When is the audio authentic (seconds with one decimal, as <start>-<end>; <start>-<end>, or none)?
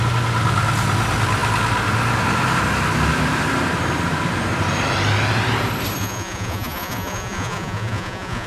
0.0-6.0